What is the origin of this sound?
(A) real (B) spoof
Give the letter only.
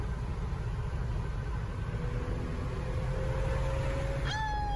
A